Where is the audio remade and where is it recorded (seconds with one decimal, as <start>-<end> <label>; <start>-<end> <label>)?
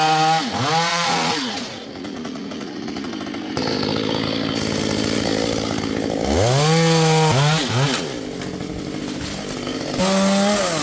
0.0-0.9 recorded; 0.9-3.1 remade; 3.1-10.8 recorded